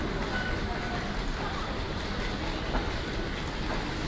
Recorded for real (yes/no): yes